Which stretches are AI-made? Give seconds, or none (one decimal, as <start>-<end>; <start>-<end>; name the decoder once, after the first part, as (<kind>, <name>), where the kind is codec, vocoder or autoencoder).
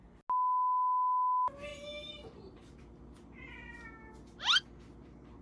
1.7-2.8 (vocoder, BigVGAN v2)